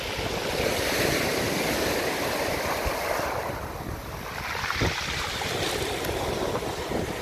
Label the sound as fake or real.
real